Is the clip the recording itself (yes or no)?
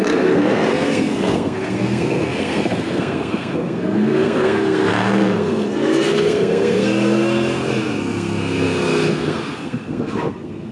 no